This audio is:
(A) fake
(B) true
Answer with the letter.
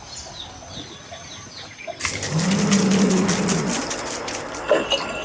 B